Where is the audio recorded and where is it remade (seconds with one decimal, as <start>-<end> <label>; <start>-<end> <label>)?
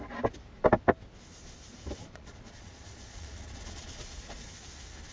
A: 0.0-2.0 recorded; 2.0-4.5 remade; 4.5-5.1 recorded